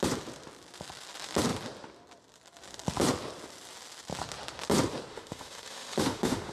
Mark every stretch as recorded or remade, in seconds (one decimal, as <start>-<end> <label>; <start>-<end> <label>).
0.0-5.1 recorded; 5.1-6.5 remade